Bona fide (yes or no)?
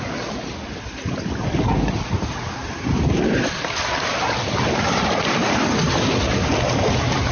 yes